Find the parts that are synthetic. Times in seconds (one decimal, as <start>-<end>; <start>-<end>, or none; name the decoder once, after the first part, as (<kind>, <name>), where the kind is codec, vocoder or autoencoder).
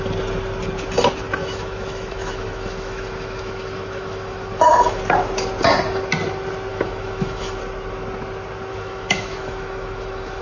1.4-5.0 (autoencoder, DAC-VAE); 6.7-7.6; 8.7-10.4